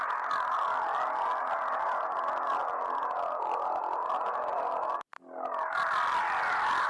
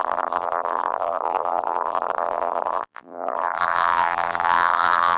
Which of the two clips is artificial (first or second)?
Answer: second